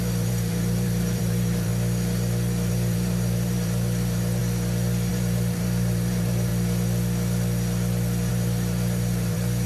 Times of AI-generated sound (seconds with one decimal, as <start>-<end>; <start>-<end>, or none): 0.0-1.7; 2.7-4.4; 5.1-6.5; 8.3-9.7